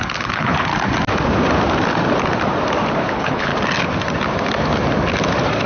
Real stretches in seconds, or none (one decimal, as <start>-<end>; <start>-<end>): 0.7-3.0; 3.5-5.7